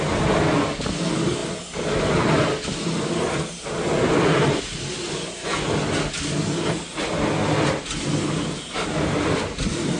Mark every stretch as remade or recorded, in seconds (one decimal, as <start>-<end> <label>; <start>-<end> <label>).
0.0-10.0 recorded